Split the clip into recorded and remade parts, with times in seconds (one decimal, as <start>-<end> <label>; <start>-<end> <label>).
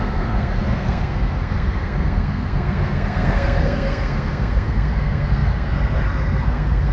0.0-6.9 remade